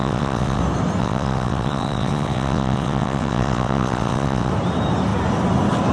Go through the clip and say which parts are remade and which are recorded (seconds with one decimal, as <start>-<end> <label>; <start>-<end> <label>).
0.0-0.6 remade; 0.6-1.0 recorded; 1.0-4.5 remade; 4.5-5.9 recorded